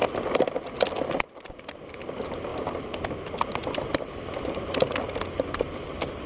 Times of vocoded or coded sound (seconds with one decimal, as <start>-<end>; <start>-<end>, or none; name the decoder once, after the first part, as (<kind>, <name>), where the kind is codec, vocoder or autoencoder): none

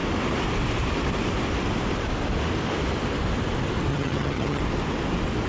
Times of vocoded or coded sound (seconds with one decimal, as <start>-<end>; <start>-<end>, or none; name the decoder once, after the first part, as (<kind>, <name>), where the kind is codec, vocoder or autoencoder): 3.9-4.6 (vocoder, HiFi-GAN)

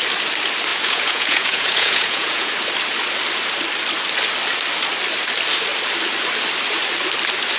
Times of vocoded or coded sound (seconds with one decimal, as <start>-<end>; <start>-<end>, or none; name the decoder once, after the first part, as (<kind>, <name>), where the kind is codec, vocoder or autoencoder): 0.7-2.5 (vocoder, Vocos)

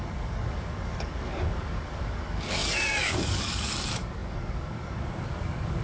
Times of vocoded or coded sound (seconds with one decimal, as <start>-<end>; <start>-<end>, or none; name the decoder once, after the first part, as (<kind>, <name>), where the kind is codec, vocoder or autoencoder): 0.0-5.8 (codec, DAC)

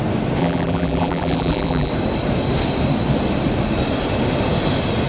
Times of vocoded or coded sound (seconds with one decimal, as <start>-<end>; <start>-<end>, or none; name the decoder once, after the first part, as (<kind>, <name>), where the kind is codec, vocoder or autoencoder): 0.4-1.9 (vocoder, BigVGAN v2)

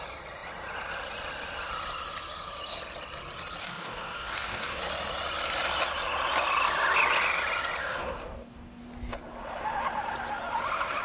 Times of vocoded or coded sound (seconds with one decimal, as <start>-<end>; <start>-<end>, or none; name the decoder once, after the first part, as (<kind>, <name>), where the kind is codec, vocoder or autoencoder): 3.6-4.8 (codec, DAC); 7.8-8.8

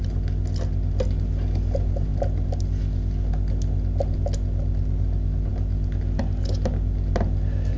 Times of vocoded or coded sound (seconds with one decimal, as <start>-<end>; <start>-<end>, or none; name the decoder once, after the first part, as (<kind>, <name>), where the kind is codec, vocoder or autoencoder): none